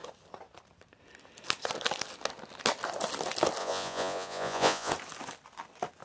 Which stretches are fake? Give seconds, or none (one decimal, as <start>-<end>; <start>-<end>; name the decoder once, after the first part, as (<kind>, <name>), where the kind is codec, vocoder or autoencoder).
3.6-4.9 (vocoder, Vocos)